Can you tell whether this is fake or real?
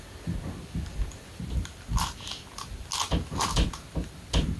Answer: real